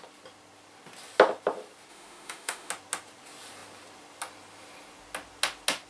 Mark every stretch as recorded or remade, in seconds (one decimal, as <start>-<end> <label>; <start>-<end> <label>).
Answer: 0.0-1.9 recorded; 1.9-2.7 remade; 2.7-5.9 recorded